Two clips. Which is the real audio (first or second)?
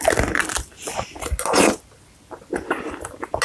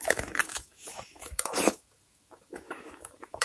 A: first